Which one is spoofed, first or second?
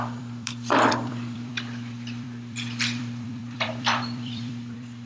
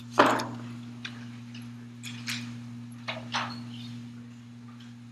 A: first